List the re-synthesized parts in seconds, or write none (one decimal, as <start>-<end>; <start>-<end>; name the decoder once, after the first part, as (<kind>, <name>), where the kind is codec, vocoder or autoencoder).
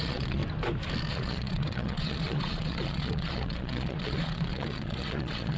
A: 0.0-0.4 (vocoder, Vocos); 1.1-5.6